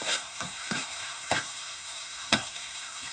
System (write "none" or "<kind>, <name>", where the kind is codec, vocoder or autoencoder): codec, SNAC